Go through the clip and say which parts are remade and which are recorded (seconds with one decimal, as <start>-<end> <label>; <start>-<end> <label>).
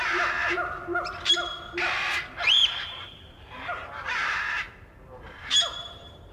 0.0-2.6 recorded; 2.6-6.3 remade